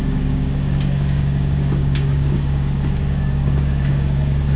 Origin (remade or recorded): remade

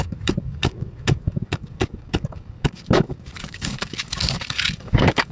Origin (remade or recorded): remade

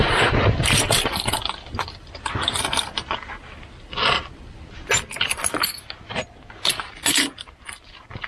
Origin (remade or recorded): recorded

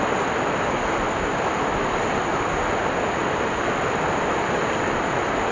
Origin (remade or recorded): recorded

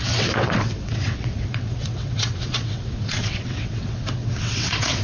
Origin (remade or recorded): remade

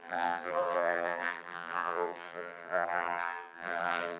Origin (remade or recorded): remade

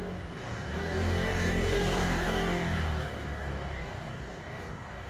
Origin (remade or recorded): remade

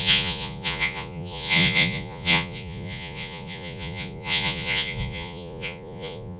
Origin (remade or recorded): remade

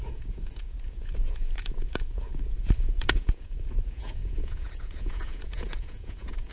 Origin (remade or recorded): remade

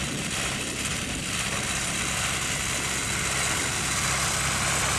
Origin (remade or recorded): recorded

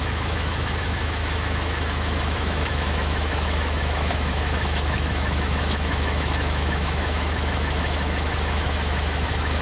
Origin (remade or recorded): remade